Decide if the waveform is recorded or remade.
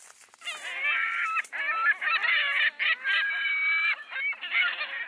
recorded